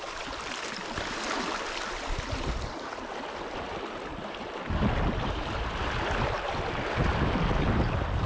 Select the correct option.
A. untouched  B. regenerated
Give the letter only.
A